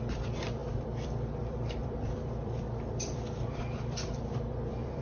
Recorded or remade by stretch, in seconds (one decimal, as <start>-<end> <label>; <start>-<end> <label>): 0.0-5.0 remade